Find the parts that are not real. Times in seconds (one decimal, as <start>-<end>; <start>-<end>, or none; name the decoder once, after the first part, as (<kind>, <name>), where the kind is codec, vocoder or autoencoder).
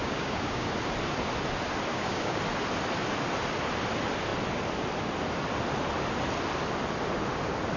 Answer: 0.0-0.7 (codec, DAC); 1.9-2.4